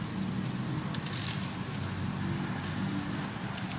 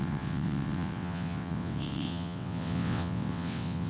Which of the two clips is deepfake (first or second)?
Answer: second